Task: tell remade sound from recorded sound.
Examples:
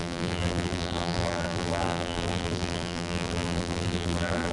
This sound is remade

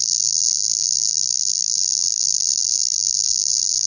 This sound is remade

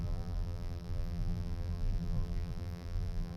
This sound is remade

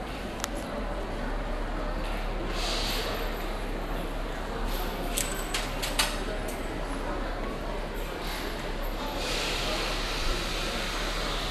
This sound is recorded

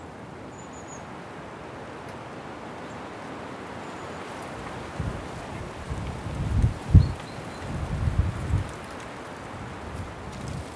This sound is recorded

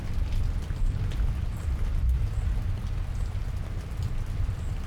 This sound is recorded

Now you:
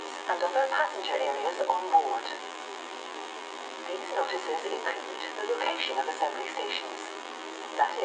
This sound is remade